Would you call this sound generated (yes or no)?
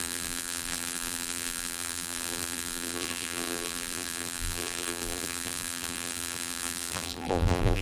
yes